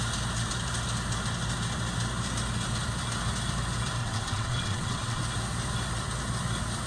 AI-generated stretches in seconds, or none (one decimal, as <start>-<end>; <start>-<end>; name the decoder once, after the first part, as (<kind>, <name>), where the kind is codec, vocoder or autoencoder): 4.0-5.2 (vocoder, WaveNeXt)